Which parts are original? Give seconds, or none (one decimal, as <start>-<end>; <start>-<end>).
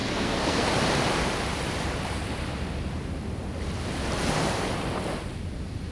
0.7-5.9